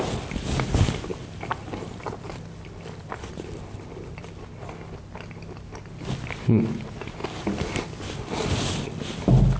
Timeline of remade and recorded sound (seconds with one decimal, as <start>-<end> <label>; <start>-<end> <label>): 0.0-9.6 recorded